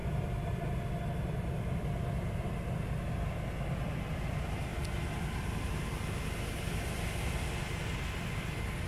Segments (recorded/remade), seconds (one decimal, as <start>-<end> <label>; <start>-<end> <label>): 0.0-8.9 recorded